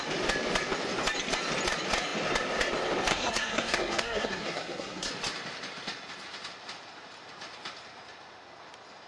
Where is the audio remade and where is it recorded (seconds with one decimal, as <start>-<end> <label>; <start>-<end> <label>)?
0.0-3.1 recorded; 3.1-5.1 remade; 5.1-9.1 recorded